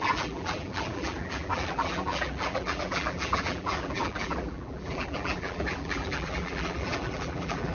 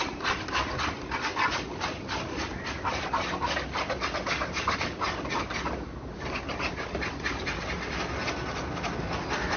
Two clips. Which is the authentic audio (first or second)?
second